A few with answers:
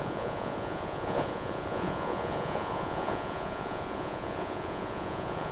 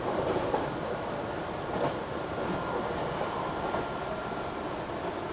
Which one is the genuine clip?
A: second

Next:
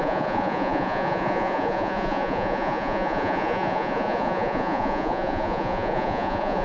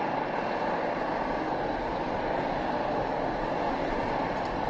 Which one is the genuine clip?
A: second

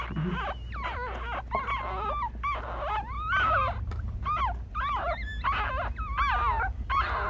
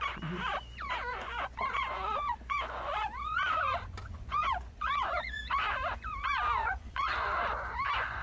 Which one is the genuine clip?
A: first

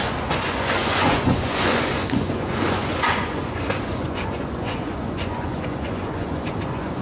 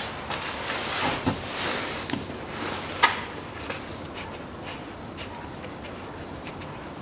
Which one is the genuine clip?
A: second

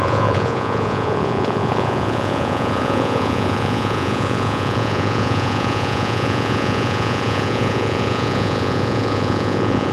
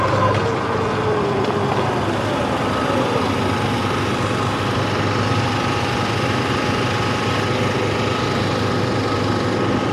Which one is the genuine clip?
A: second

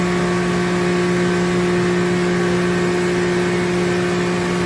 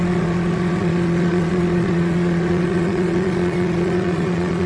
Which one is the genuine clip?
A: first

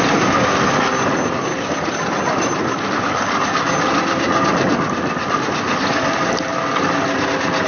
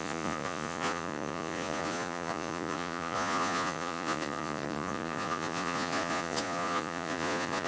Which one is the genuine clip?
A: first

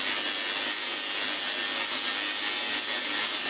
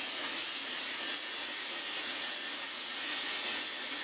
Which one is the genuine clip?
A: first